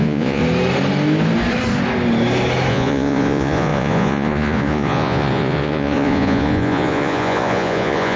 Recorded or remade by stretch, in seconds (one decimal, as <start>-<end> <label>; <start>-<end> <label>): 0.0-0.4 remade; 0.4-2.7 recorded; 2.7-8.2 remade